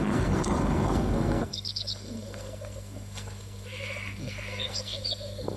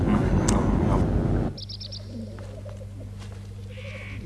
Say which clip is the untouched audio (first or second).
second